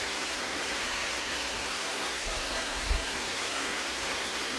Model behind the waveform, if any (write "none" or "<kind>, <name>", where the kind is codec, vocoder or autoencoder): codec, SNAC